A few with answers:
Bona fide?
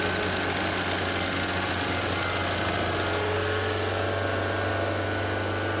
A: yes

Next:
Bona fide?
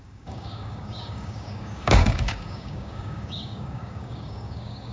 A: no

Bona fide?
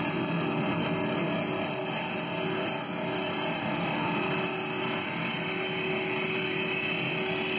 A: yes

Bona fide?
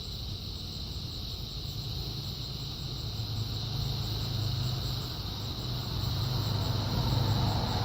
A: yes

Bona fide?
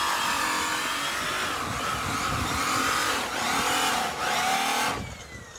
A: yes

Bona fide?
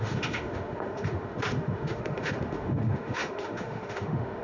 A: no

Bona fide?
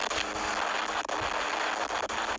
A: yes